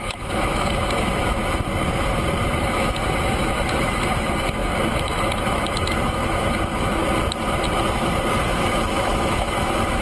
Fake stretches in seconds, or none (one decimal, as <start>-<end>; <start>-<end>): 0.0-1.4; 2.6-7.0; 8.7-10.0